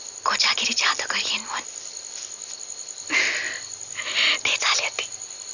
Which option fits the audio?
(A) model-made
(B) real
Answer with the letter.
B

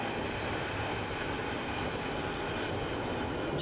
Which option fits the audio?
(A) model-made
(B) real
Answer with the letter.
B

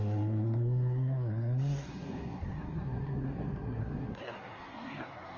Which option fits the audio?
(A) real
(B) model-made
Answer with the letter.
B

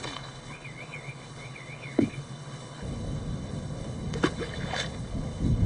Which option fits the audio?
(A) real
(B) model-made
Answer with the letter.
B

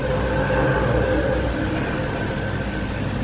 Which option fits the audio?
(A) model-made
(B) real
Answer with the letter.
B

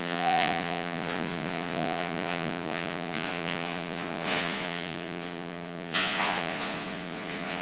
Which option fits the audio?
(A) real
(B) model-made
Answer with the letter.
B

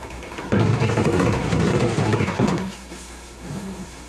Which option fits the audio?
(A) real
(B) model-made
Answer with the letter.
B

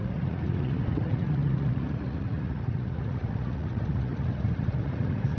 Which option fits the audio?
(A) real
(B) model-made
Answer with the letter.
B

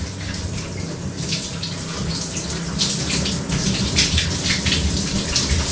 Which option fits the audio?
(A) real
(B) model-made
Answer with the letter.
A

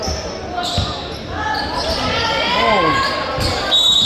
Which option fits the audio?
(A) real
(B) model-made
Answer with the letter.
A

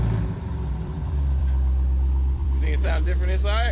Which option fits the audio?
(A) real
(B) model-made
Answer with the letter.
B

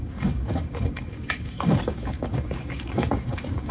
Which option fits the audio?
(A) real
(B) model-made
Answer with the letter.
B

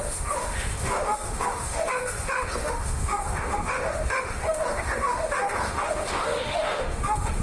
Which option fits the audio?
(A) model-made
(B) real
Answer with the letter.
A